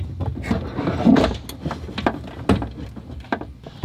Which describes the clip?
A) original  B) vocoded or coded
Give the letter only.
A